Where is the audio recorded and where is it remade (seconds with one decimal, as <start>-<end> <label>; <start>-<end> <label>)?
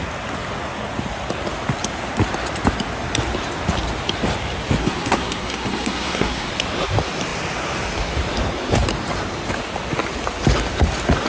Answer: 0.0-4.8 recorded; 4.8-6.5 remade; 6.5-11.3 recorded